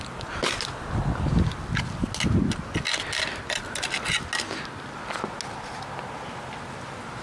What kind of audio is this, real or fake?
real